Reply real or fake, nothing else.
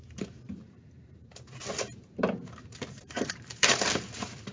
fake